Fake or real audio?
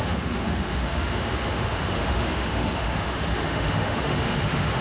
fake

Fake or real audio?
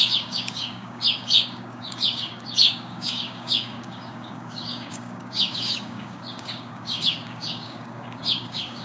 fake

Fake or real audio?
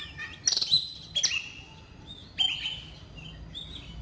real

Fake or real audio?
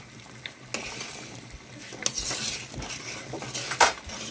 real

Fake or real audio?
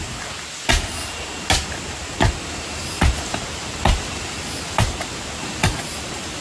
real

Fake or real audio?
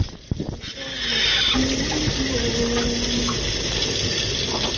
real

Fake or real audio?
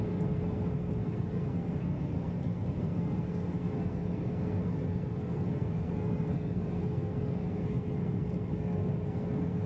fake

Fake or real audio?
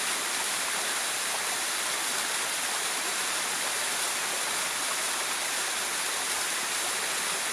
real